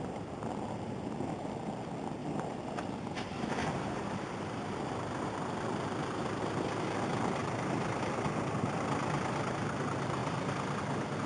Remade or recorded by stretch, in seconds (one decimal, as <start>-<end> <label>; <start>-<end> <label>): 0.0-7.4 recorded; 7.4-8.0 remade; 8.0-10.2 recorded; 10.2-10.8 remade; 10.8-11.3 recorded